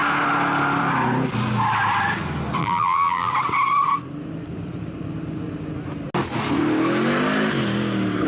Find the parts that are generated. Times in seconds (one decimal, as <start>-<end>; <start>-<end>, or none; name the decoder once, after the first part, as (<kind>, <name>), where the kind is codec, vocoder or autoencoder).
2.6-3.3 (vocoder, BigVGAN v2)